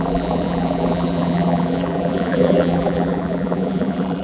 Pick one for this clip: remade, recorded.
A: remade